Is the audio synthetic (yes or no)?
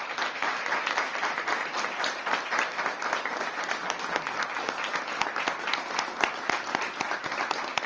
no